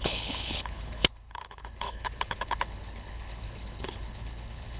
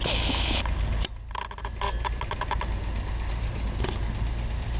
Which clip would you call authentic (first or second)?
second